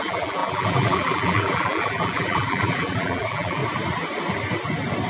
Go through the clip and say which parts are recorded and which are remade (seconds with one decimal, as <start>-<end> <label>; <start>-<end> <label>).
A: 0.0-3.6 remade; 3.6-5.1 recorded